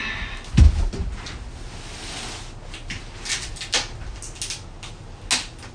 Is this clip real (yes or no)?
yes